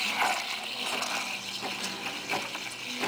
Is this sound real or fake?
real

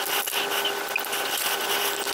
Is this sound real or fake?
real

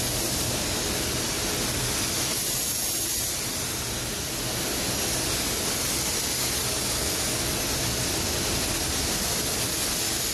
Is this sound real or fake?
real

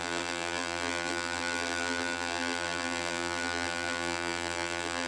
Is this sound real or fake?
fake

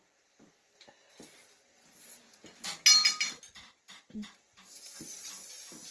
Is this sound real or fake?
real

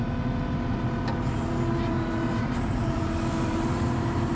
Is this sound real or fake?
fake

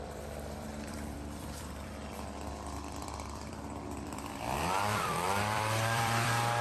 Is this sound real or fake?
fake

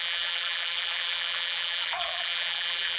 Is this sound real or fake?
fake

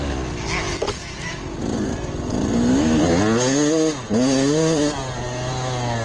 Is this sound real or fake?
real